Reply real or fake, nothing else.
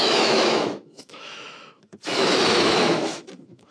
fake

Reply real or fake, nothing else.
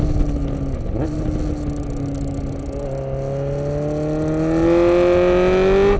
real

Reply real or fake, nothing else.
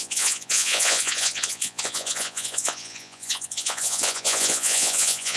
fake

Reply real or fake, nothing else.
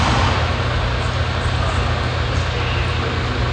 real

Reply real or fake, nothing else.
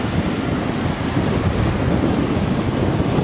real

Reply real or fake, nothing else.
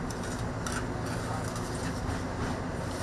real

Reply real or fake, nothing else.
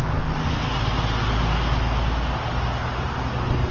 real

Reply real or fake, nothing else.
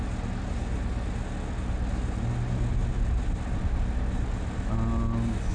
real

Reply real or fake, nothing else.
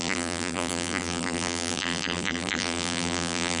fake